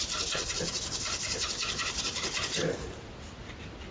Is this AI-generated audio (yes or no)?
no